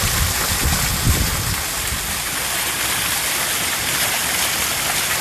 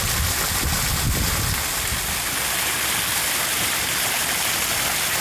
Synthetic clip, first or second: first